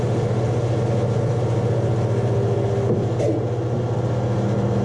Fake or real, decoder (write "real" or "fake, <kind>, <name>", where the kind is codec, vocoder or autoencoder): real